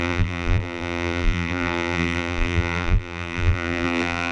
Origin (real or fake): fake